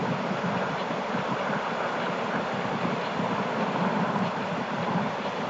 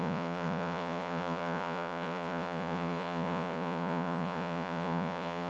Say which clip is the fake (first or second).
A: second